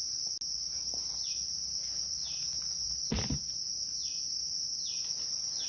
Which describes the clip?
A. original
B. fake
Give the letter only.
A